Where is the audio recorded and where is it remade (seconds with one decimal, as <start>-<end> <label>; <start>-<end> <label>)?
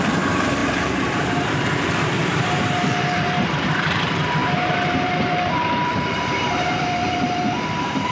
0.0-8.1 remade